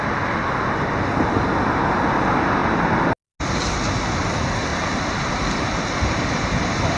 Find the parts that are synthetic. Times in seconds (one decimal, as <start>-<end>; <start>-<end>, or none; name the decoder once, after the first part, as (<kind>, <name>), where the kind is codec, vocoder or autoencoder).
none